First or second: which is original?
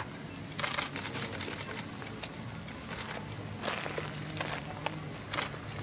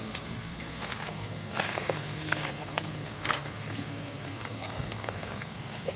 first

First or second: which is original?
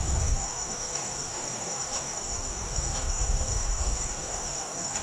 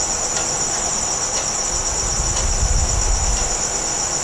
second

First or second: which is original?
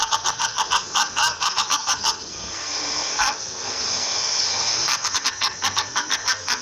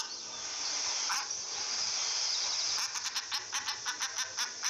second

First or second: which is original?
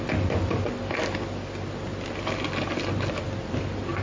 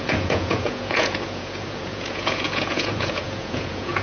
first